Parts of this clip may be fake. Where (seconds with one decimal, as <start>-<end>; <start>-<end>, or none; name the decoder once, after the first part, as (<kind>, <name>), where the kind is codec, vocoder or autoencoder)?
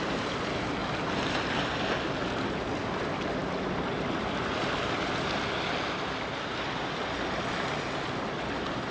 none